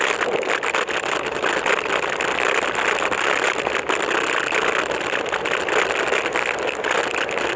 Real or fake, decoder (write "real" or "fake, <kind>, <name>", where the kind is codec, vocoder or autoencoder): real